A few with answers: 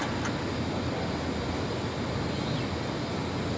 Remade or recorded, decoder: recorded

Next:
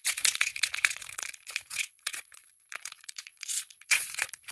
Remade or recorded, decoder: remade, vocoder, Vocos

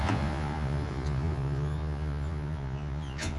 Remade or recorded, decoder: remade, vocoder, Vocos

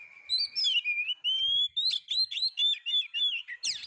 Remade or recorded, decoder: recorded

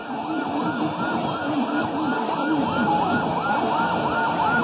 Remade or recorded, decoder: recorded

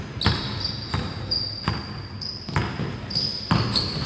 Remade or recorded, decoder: recorded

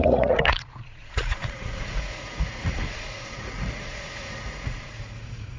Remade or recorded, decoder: remade, vocoder, Vocos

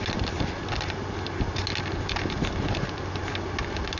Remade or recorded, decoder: recorded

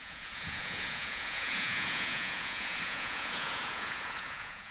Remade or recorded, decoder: remade, vocoder, Vocos